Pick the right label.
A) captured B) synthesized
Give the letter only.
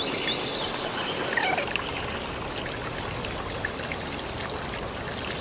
A